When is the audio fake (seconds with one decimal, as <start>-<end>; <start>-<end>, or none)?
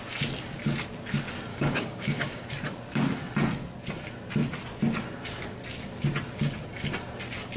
1.5-2.5